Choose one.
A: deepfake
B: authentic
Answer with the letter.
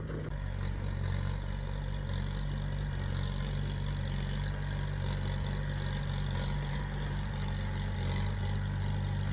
B